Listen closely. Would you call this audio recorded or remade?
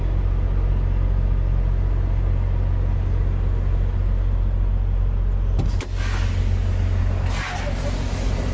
recorded